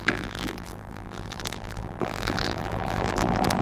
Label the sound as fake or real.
fake